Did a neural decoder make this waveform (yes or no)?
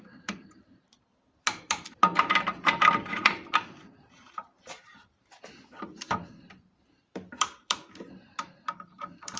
yes